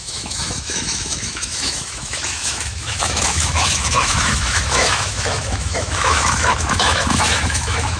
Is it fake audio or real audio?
fake